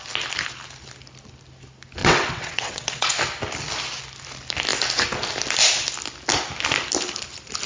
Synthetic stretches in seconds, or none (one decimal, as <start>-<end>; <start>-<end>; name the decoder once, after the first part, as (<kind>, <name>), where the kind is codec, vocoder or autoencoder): 2.0-3.1 (vocoder, WaveNeXt)